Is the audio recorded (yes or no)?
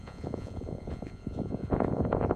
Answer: no